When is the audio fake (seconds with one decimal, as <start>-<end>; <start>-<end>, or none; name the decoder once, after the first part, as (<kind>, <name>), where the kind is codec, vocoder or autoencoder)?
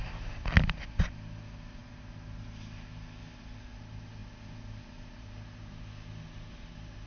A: none